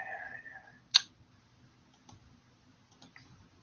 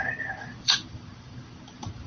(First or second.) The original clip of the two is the first